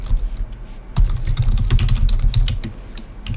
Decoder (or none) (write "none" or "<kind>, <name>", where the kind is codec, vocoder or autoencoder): none